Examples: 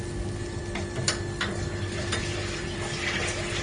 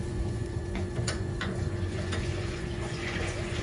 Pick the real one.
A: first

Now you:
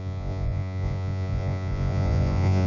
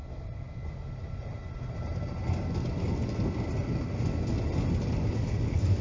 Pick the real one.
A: second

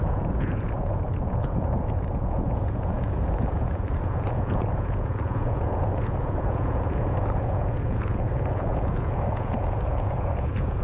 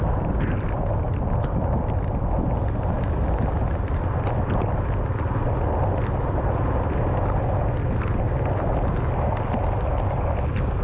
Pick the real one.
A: second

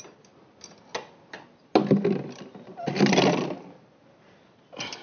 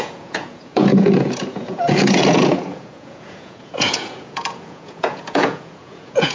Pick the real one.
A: first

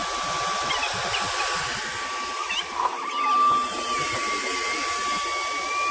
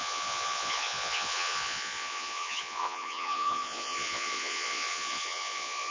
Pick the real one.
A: first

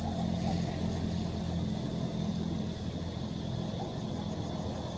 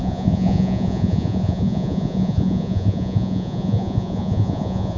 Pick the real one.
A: first